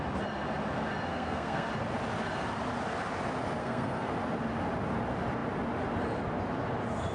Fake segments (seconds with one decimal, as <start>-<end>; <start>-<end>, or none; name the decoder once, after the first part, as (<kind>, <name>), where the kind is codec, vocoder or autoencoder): 1.1-1.7 (codec, SNAC); 3.6-4.1